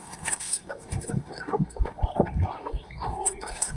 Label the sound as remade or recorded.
remade